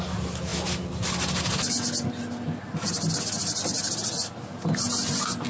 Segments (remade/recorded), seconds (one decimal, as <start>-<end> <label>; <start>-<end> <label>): 0.0-5.5 recorded